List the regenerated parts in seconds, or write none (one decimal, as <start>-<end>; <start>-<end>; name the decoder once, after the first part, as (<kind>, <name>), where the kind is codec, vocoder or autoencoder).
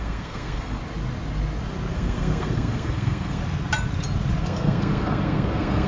0.0-0.8 (codec, SNAC); 1.9-3.4; 4.4-5.9